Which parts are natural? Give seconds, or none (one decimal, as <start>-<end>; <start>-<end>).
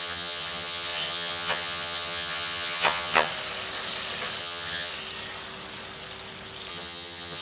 3.3-4.4; 4.9-6.7